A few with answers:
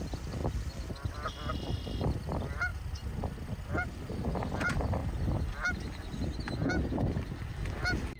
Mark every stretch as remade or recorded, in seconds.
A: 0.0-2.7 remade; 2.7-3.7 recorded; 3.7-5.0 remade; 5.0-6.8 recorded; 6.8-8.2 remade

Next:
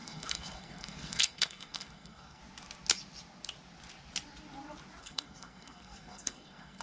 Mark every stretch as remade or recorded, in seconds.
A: 0.0-2.4 remade; 2.4-5.0 recorded; 5.0-6.8 remade

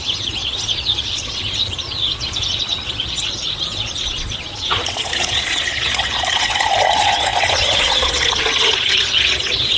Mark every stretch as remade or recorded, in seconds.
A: 0.0-9.8 remade

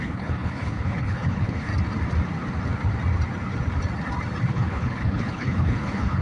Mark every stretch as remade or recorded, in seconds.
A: 0.0-1.7 remade; 1.7-4.5 recorded; 4.5-6.2 remade

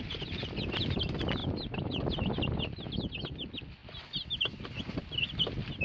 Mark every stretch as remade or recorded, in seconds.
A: 0.0-5.8 recorded

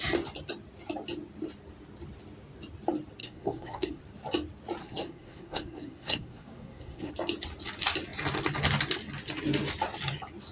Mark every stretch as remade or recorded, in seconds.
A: 0.0-3.2 recorded; 3.2-4.0 remade; 4.0-4.8 recorded; 4.8-7.1 remade; 7.1-10.5 recorded

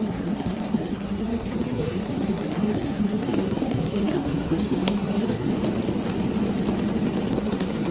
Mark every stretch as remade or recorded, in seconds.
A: 0.0-5.5 remade; 5.5-7.3 recorded; 7.3-7.9 remade